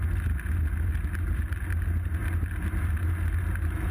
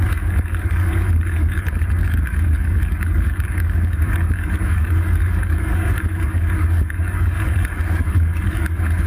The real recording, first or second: first